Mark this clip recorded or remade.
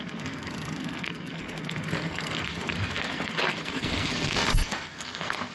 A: remade